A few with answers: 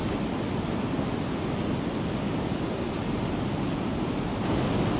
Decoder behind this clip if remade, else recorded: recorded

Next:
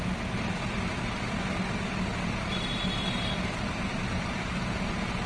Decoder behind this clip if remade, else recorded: recorded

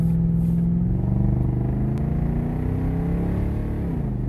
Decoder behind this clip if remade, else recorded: recorded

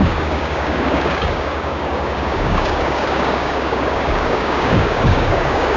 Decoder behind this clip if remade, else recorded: remade, codec, DAC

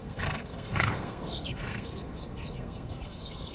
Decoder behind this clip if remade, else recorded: remade, codec, SNAC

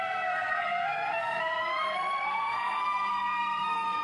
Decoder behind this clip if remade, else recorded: remade, codec, SNAC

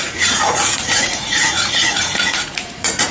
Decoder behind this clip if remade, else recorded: remade, vocoder, Vocos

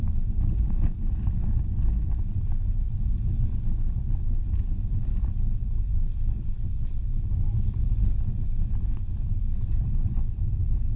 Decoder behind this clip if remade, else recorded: recorded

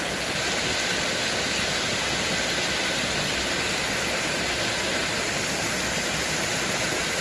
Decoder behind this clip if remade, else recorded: recorded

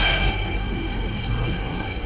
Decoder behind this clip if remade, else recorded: remade, codec, SNAC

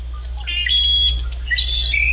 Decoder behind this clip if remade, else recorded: recorded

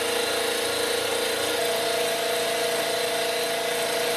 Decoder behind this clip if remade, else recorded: recorded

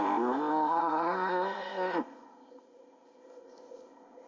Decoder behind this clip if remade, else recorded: remade, codec, ZipCodec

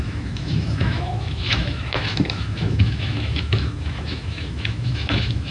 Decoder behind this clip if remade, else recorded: remade, autoencoder, DAC-VAE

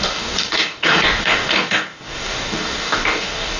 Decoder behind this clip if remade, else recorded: remade, codec, DAC